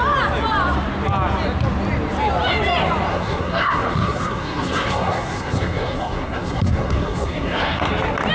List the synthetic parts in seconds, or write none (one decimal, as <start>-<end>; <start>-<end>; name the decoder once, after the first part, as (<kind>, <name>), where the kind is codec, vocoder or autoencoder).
3.1-7.9 (codec, SNAC)